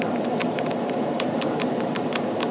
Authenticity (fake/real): fake